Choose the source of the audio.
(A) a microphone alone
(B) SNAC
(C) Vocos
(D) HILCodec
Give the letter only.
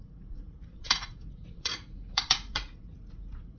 C